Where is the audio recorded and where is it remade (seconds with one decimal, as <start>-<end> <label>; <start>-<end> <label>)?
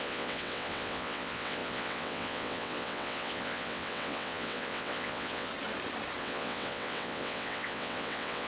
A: 0.0-5.5 remade; 5.5-6.2 recorded; 6.2-8.5 remade